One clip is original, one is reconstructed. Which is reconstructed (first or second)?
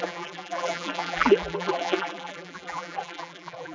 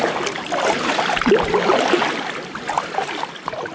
first